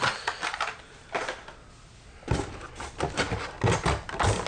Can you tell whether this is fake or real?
real